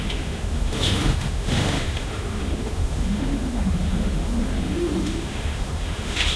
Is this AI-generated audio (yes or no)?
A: yes